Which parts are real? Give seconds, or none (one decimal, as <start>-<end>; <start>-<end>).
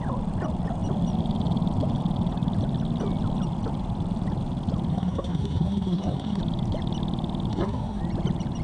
0.0-4.9; 6.4-7.5; 8.0-8.6